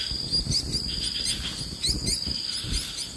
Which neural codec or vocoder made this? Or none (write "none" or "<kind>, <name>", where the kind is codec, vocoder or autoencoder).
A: none